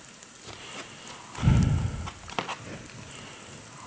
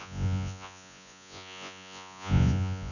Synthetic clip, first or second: second